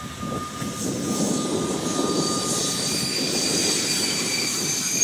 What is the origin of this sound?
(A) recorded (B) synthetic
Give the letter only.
A